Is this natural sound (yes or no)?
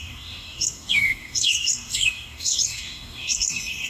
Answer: no